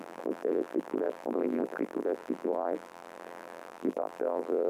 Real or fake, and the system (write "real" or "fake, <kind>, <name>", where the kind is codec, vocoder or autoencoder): fake, vocoder, BigVGAN v2